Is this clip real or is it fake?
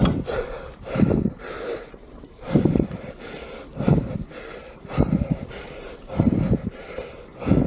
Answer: fake